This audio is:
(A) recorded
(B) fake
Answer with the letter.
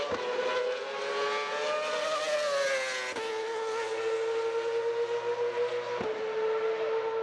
A